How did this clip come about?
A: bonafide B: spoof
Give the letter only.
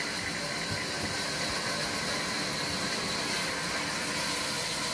A